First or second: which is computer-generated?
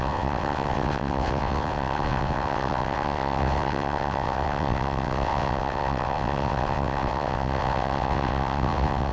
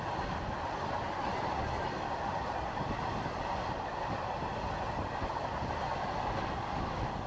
first